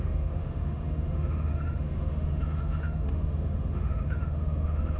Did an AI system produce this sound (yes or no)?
yes